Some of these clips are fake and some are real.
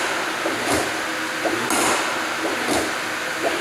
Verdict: real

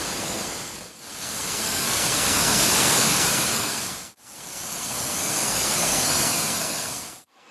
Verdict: fake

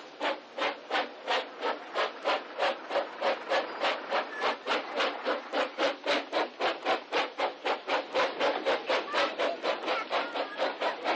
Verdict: real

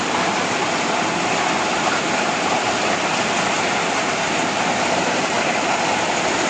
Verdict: real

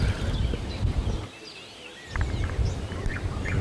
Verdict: real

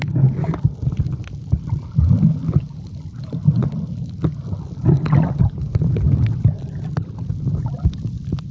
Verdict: real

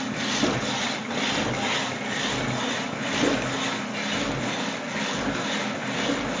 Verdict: real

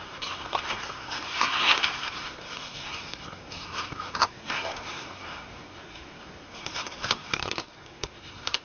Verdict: fake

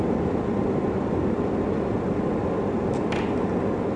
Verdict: real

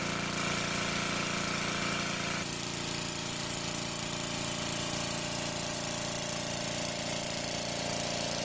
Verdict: real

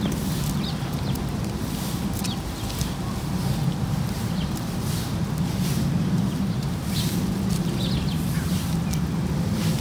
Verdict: real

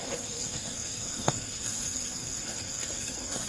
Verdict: fake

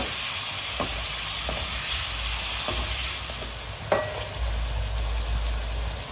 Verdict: real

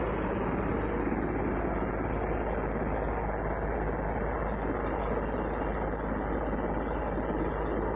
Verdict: real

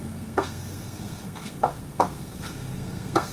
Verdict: fake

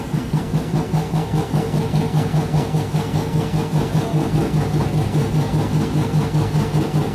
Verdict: fake